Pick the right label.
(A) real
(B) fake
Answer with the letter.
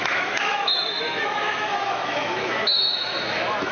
B